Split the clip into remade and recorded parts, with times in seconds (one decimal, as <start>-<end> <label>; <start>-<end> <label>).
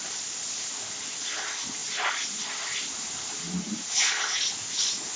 0.0-5.2 recorded